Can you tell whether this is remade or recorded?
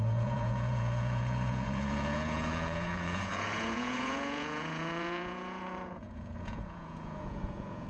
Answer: remade